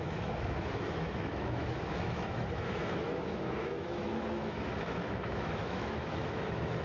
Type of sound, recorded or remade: remade